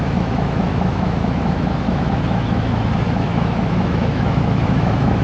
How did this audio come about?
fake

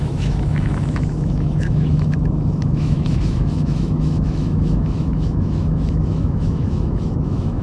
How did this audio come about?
fake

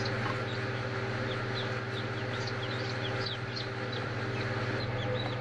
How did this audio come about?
real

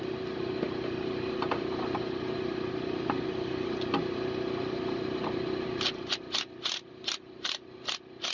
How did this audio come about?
real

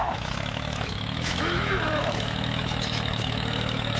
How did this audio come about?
fake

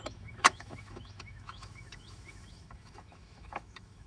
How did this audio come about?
fake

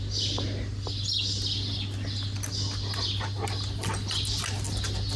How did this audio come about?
real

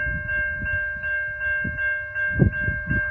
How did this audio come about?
real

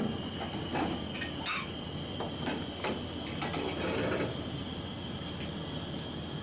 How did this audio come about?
real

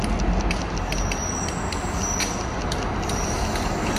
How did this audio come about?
real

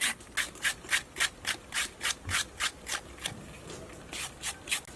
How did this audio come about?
real